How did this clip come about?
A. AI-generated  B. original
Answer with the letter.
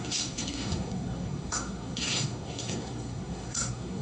A